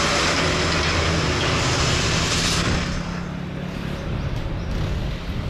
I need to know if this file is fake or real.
real